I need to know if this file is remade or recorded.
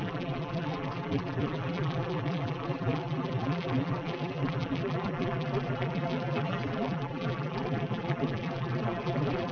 remade